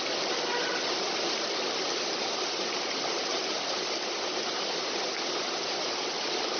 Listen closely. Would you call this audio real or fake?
real